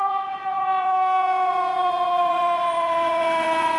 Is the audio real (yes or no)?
no